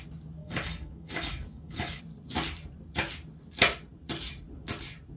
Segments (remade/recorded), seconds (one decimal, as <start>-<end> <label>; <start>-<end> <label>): 0.0-0.4 recorded; 0.4-2.0 remade; 2.0-5.2 recorded